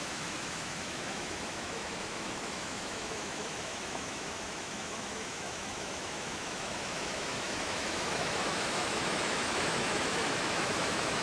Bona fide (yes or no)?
no